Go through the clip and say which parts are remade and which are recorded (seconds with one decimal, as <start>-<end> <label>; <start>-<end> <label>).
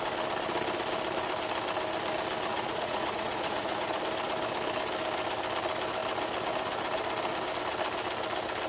0.0-2.5 recorded; 2.5-4.0 remade; 4.0-8.7 recorded